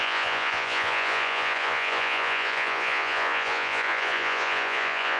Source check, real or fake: fake